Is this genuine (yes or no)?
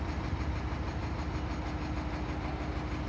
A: yes